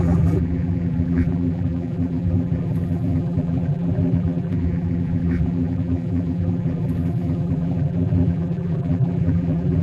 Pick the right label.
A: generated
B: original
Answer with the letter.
A